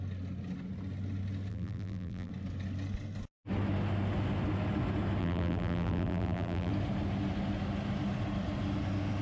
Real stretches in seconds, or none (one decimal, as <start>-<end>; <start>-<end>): 0.0-1.5; 2.3-5.2; 6.7-9.2